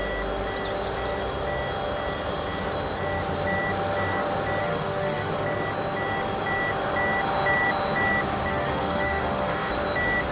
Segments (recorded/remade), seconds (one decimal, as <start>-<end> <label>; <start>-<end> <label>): 0.0-4.6 recorded; 4.6-5.3 remade; 5.3-8.5 recorded; 8.5-9.7 remade; 9.7-10.3 recorded